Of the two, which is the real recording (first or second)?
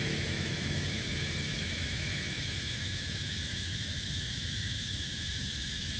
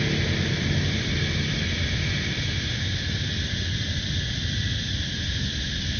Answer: second